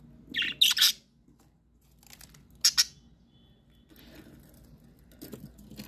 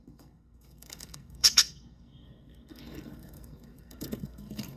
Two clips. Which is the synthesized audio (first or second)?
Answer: second